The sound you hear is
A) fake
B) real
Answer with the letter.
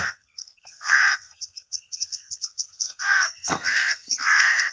A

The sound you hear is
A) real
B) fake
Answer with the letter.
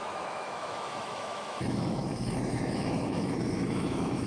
B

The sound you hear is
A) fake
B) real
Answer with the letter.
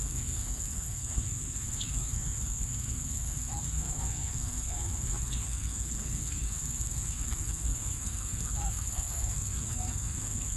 A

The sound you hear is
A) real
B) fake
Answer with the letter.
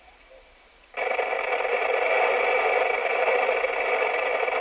A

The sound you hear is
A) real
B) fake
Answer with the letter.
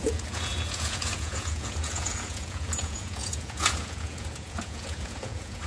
B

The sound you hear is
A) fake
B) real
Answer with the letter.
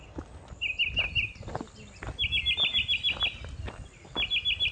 B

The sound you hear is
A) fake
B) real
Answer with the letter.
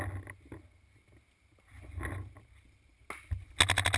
B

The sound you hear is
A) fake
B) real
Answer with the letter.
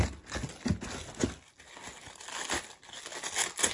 B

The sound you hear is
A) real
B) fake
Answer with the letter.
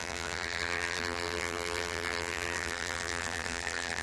B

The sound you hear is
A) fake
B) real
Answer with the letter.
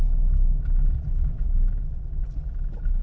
B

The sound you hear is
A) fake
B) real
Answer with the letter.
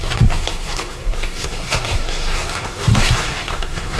A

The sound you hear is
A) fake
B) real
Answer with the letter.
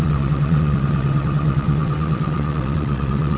A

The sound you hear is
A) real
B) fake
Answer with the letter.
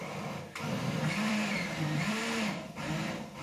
B